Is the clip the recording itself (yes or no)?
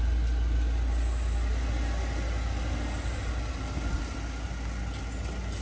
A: yes